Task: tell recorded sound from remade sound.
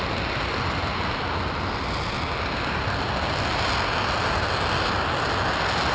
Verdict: recorded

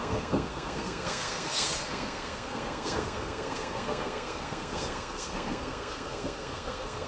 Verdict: remade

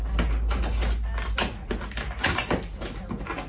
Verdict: recorded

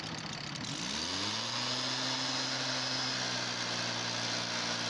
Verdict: recorded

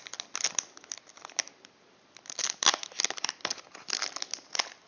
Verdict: recorded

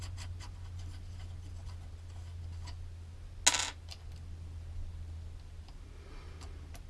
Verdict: recorded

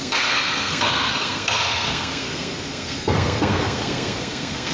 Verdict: remade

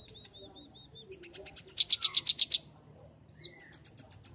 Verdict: recorded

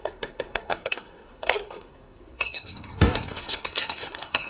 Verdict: remade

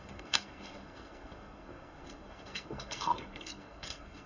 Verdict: remade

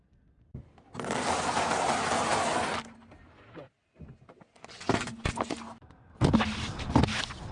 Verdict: recorded